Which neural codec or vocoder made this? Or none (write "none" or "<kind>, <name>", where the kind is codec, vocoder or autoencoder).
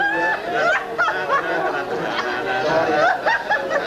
none